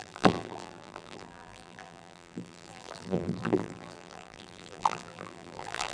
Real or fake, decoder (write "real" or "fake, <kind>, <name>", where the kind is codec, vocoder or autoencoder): fake, vocoder, BigVGAN v2